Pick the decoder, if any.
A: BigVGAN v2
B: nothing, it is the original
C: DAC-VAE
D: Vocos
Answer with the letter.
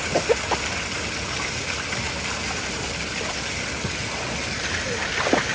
B